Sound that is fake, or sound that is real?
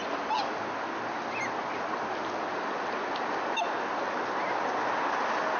real